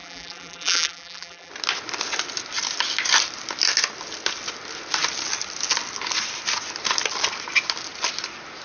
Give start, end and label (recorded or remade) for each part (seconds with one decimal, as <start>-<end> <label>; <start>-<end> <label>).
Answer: 0.0-1.5 remade; 1.5-8.6 recorded